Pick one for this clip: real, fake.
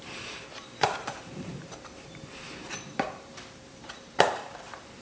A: fake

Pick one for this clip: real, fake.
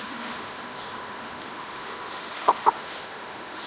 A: fake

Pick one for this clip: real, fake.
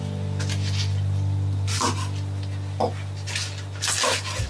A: real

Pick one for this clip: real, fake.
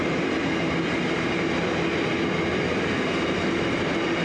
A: real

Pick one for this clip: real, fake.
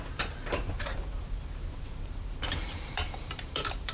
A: fake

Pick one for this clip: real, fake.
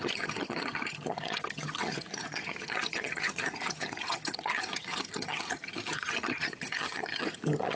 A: fake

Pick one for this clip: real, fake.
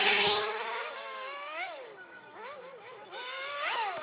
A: fake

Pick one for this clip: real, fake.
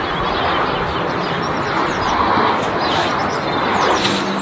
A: real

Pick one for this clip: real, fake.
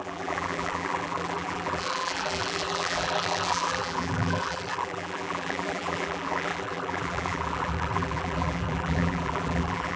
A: fake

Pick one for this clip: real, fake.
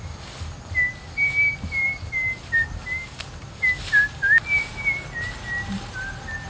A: real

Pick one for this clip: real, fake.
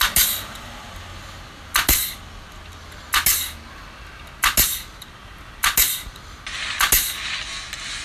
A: real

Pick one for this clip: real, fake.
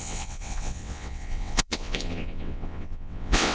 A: fake